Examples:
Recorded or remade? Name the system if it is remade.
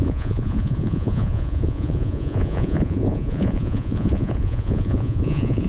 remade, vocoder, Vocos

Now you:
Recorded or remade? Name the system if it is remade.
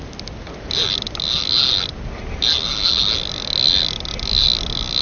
recorded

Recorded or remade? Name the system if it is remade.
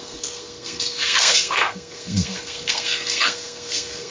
remade, codec, SNAC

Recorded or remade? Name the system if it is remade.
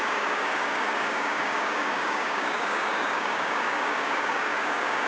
remade, codec, DAC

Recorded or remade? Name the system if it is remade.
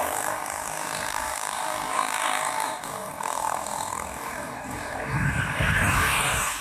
remade, codec, DAC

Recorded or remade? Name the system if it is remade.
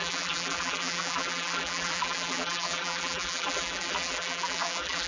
remade, vocoder, BigVGAN v2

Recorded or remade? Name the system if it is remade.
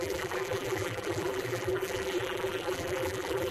remade, vocoder, BigVGAN v2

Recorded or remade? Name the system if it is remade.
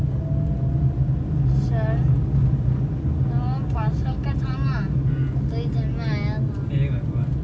recorded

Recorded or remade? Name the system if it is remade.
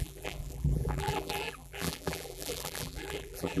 remade, vocoder, BigVGAN v2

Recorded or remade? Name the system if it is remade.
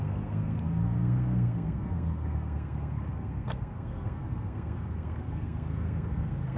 remade, codec, SNAC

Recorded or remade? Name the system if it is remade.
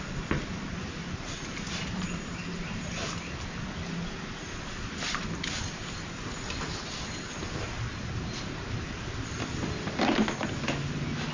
recorded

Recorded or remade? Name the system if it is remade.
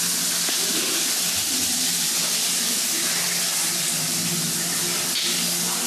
recorded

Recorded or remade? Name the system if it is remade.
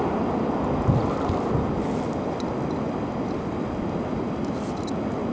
recorded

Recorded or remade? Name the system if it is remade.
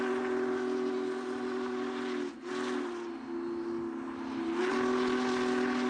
recorded